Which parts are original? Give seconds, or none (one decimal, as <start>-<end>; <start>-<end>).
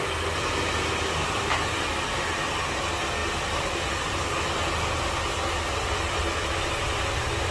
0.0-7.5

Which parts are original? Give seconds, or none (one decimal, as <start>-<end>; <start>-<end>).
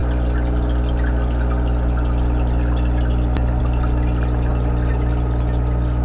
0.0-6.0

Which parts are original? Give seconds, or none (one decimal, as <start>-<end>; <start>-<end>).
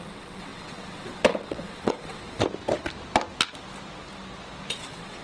2.4-4.7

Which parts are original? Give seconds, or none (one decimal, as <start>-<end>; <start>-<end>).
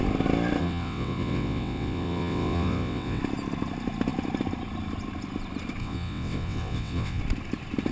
0.0-0.6; 3.2-5.8; 7.2-7.9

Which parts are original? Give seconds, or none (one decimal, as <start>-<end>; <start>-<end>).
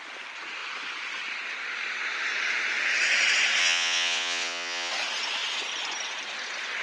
0.0-3.6; 4.9-6.8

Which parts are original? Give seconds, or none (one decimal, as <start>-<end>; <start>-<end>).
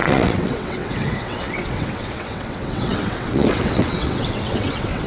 none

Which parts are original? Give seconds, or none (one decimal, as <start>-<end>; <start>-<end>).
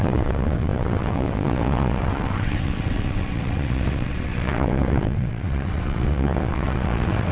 none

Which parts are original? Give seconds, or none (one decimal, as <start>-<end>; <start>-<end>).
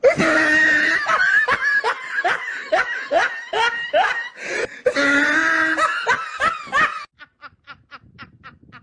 0.0-8.8